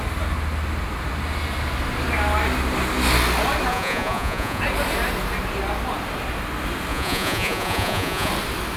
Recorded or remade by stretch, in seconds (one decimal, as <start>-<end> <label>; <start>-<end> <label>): 0.0-3.7 recorded; 3.7-4.6 remade; 4.6-6.9 recorded; 6.9-8.3 remade; 8.3-8.8 recorded